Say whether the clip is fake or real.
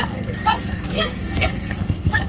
fake